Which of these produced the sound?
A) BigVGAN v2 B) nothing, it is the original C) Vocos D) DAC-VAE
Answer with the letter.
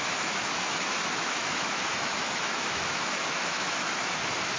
D